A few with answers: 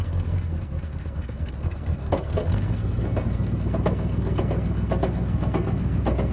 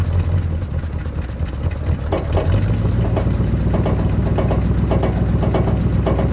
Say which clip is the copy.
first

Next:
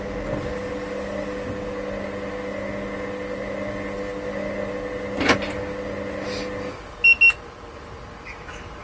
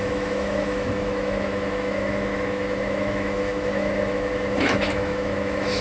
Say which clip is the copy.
second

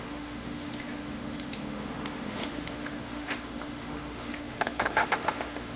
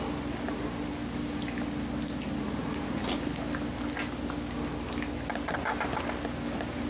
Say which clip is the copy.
first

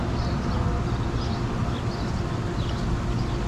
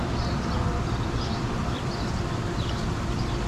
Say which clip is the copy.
second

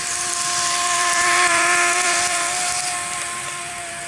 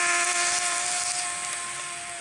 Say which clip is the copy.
first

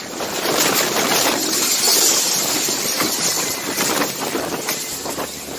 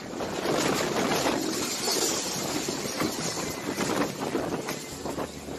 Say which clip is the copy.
first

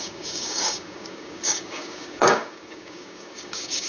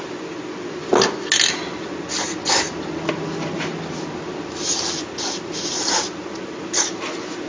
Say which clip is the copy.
first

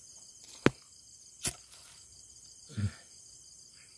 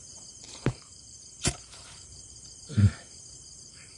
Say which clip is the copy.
second